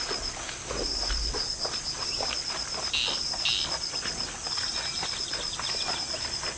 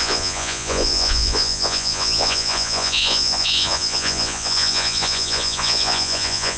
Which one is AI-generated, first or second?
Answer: second